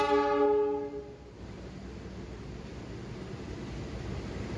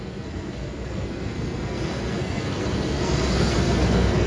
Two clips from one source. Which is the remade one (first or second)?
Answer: second